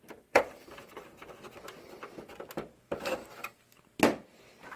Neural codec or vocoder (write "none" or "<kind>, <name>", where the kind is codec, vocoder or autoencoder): none